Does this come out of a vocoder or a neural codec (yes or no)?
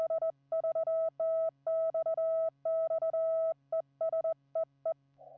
no